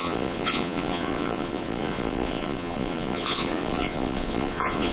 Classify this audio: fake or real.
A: fake